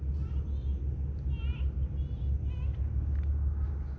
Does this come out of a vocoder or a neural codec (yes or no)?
no